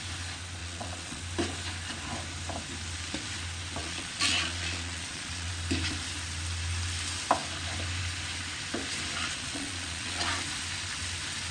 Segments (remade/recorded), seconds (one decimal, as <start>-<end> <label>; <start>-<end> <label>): 0.0-0.6 recorded; 0.6-1.2 remade; 1.2-3.8 recorded; 3.8-5.5 remade; 5.5-9.2 recorded; 9.2-10.3 remade; 10.3-11.5 recorded